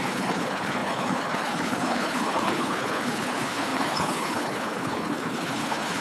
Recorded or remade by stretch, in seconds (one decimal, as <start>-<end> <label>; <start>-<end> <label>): 0.0-6.0 remade